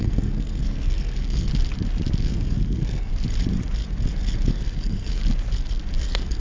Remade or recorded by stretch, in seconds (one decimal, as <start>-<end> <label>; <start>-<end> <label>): 0.0-1.5 remade; 1.5-2.2 recorded; 2.2-3.1 remade; 3.1-4.5 recorded; 4.5-5.2 remade; 5.2-6.0 recorded; 6.0-6.4 remade